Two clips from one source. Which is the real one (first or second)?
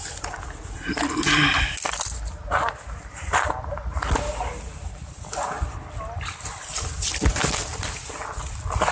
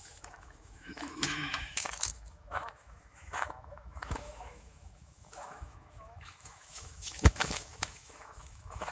first